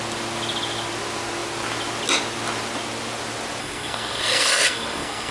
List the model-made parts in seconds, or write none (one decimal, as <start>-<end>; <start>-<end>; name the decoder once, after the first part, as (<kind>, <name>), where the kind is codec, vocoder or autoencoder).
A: 3.6-5.3 (codec, SNAC)